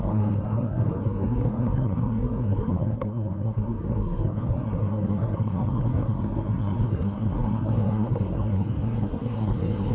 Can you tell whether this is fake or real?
fake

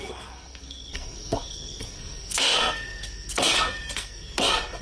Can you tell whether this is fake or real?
fake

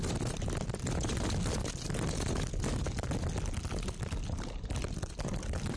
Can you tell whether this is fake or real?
real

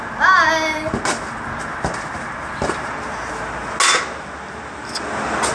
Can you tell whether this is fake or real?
real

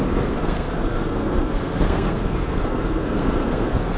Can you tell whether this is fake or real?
fake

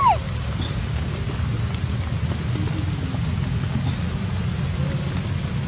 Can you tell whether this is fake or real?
real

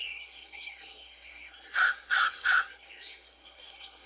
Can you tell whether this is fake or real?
fake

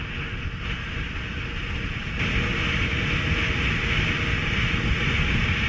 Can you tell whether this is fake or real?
real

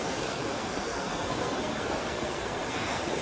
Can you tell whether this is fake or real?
fake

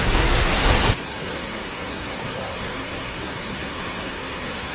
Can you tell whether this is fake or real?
fake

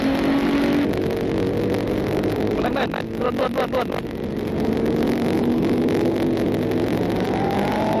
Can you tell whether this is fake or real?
real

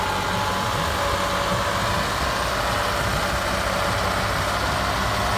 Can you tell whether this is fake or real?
real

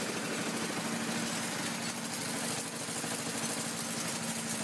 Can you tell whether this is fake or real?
real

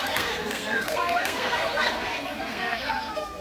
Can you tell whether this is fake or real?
fake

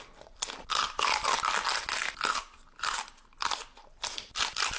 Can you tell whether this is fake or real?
real